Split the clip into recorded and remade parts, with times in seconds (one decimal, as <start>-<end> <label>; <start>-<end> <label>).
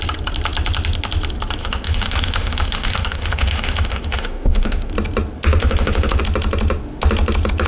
0.0-1.6 recorded; 1.6-4.9 remade; 4.9-5.6 recorded; 5.6-6.2 remade; 6.2-7.7 recorded